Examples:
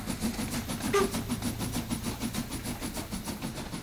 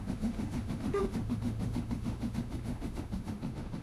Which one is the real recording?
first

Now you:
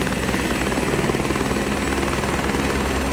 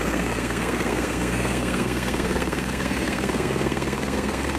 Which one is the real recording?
first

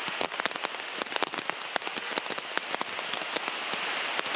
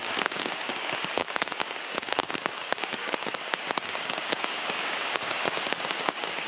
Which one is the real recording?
first